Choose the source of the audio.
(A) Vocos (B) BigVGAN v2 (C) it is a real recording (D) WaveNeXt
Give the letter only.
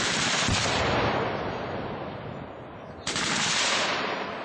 C